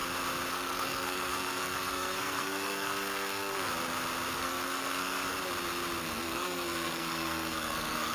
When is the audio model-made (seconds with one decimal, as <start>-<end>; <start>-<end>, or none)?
0.5-3.7; 4.3-5.3; 6.0-8.1